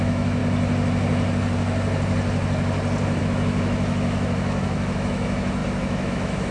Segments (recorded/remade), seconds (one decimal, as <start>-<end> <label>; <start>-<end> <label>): 0.0-0.4 remade; 0.4-3.2 recorded; 3.2-6.5 remade